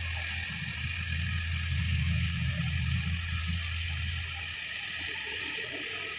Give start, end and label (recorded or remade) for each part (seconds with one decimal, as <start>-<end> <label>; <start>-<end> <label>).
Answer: 0.0-1.9 recorded; 1.9-2.6 remade; 2.6-6.2 recorded

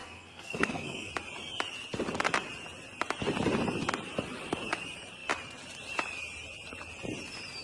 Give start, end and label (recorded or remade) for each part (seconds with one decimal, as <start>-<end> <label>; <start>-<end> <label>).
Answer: 0.0-1.1 remade; 1.1-7.6 recorded

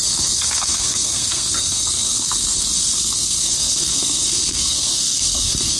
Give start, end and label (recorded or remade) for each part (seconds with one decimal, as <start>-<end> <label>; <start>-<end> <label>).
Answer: 0.0-5.8 remade

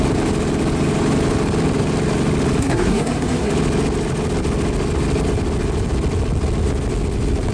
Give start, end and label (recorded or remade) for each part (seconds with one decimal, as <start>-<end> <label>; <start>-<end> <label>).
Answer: 0.0-2.6 recorded; 2.6-3.5 remade; 3.5-7.5 recorded

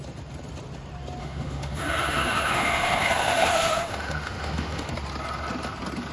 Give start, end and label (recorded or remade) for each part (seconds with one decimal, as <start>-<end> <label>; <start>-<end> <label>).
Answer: 0.0-1.2 recorded; 1.2-4.9 remade; 4.9-6.1 recorded

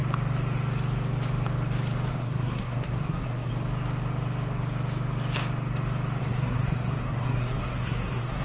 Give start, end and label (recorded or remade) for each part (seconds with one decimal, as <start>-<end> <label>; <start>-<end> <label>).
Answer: 0.0-2.1 recorded; 2.1-3.5 remade; 3.5-6.2 recorded; 6.2-8.4 remade

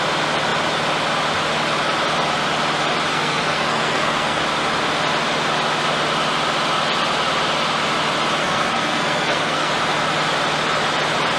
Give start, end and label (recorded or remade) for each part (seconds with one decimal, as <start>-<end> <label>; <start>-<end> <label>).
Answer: 0.0-3.1 recorded; 3.1-4.4 remade; 4.4-8.4 recorded; 8.4-9.7 remade; 9.7-11.4 recorded

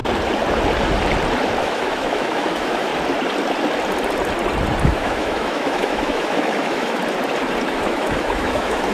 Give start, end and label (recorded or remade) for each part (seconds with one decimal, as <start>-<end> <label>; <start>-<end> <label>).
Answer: 0.0-1.6 recorded; 1.6-2.9 remade; 2.9-4.8 recorded; 4.8-7.0 remade; 7.0-7.7 recorded; 7.7-8.9 remade